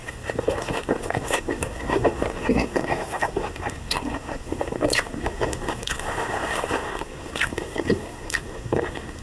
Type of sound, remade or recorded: remade